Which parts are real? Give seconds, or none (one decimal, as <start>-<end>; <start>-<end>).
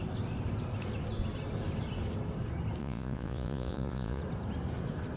0.0-2.8; 4.2-5.2